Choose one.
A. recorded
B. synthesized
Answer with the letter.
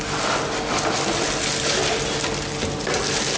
A